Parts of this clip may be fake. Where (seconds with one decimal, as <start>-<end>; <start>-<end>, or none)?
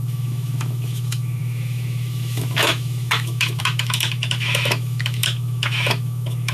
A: 0.0-6.5